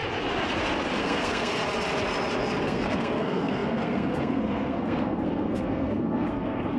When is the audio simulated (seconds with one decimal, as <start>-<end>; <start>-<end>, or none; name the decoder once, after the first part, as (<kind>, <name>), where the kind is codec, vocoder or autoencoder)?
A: 1.0-1.5 (codec, SNAC); 2.6-6.8